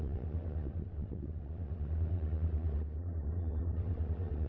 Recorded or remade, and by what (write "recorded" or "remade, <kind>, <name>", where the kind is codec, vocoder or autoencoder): remade, vocoder, WaveNeXt